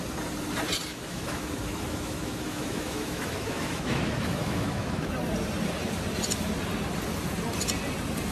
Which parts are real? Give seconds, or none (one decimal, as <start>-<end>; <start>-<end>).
0.0-0.9; 5.1-8.3